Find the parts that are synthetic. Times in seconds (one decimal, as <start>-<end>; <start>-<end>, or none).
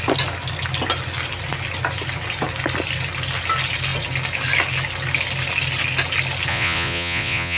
6.5-7.6